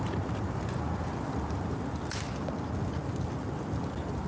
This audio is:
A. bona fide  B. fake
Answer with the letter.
A